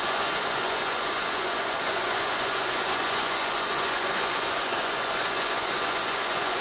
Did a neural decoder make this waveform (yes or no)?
yes